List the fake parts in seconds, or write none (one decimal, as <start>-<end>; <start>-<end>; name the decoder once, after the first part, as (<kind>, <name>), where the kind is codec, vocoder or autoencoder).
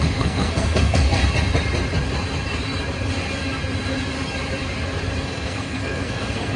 0.0-1.2 (codec, SNAC); 5.2-6.6